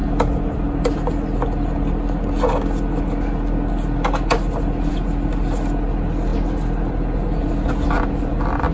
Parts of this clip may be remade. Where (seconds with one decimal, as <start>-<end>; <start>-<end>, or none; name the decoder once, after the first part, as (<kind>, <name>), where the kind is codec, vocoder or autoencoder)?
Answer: none